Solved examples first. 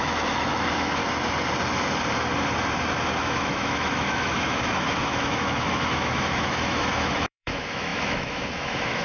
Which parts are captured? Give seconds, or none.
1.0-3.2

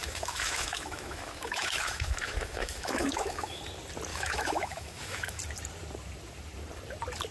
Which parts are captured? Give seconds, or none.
3.6-4.1; 5.4-7.3

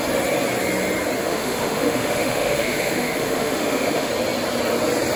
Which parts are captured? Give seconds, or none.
0.0-1.2; 4.1-5.2